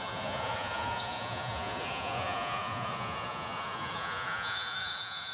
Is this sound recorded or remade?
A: remade